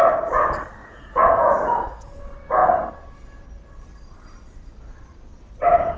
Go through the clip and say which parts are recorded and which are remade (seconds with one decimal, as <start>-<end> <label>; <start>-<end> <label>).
0.0-0.8 recorded; 0.8-2.2 remade; 2.2-6.0 recorded